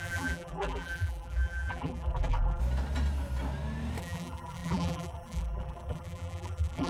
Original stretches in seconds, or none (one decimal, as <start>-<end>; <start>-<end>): 2.6-4.0